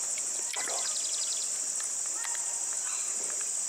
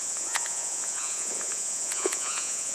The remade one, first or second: second